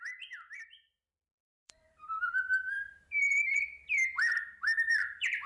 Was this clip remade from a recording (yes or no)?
yes